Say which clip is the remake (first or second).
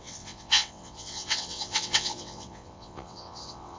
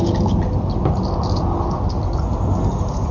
first